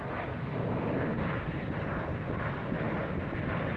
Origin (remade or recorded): recorded